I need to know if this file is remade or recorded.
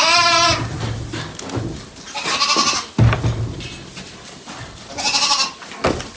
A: recorded